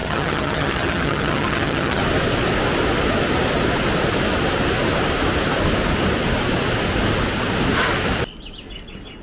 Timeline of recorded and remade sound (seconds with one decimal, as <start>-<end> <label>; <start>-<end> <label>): 0.0-2.0 remade; 2.0-9.2 recorded